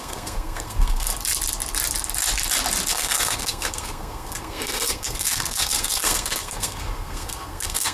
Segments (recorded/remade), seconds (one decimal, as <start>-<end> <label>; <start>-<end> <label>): 0.0-1.1 remade; 1.1-2.9 recorded; 2.9-7.9 remade